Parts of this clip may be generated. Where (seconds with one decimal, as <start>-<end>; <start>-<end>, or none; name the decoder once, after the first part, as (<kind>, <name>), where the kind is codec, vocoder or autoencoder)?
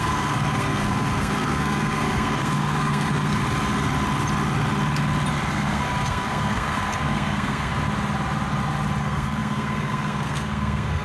0.0-3.4 (codec, SNAC); 5.5-7.7; 9.0-11.0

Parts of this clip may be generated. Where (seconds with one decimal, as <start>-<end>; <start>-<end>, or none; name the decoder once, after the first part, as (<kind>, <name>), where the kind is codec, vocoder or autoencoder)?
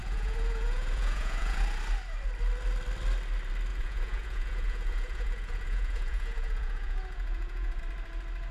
0.0-1.6 (vocoder, Vocos); 3.7-7.8